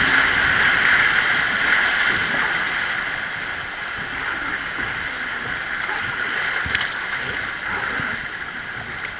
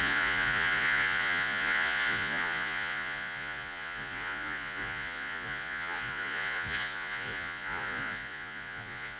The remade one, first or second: second